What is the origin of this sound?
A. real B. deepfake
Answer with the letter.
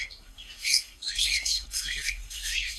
B